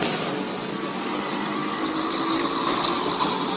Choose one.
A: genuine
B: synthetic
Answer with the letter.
A